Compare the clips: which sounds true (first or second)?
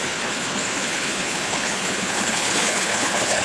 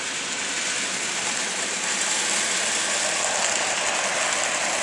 second